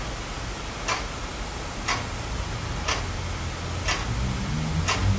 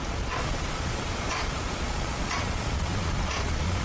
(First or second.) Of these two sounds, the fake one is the second